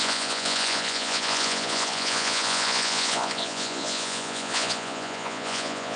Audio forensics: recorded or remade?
remade